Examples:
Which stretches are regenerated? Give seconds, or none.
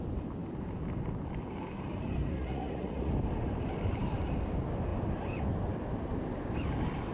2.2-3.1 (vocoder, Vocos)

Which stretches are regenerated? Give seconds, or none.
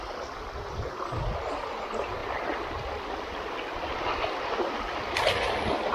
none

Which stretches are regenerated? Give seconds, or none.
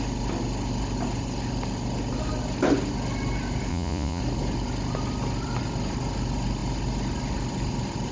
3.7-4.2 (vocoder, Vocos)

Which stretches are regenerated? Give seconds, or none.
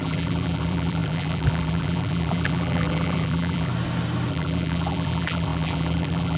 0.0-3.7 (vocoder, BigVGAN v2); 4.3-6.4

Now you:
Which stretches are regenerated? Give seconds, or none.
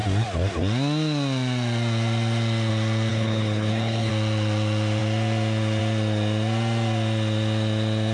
3.1-4.1 (codec, HILCodec)